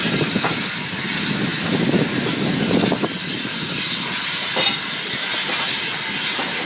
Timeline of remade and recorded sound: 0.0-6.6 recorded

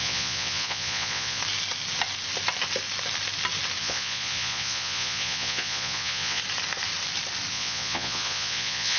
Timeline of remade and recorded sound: 0.0-1.4 remade; 1.4-3.8 recorded; 3.8-6.4 remade; 6.4-7.5 recorded; 7.5-9.0 remade